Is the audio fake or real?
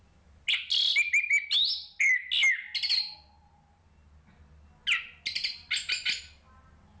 real